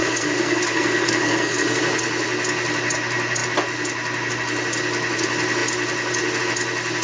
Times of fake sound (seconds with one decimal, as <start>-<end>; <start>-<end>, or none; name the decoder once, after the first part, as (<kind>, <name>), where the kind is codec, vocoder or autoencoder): 0.0-1.8 (codec, SNAC)